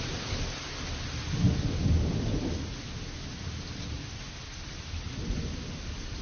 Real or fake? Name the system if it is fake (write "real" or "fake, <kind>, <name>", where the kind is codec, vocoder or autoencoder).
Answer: real